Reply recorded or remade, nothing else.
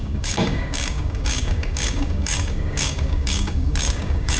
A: remade